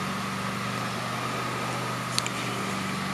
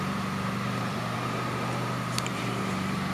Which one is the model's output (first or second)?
second